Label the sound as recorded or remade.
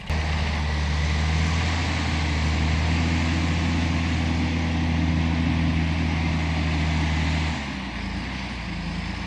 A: recorded